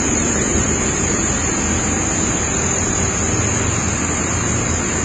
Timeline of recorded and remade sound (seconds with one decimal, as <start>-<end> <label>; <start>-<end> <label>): 0.0-1.2 remade; 1.2-4.2 recorded; 4.2-5.0 remade